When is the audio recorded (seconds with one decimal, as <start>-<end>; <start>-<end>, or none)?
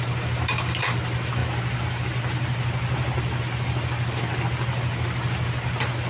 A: 0.0-6.1